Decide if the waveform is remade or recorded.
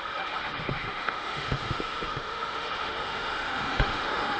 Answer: remade